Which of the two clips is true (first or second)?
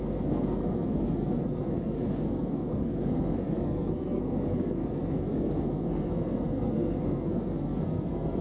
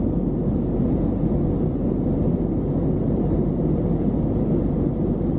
second